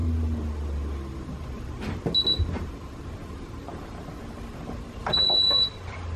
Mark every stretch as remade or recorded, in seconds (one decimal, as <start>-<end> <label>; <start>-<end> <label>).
0.0-3.2 recorded; 3.2-4.2 remade; 4.2-5.0 recorded; 5.0-5.7 remade; 5.7-6.2 recorded